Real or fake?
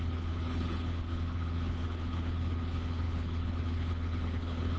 fake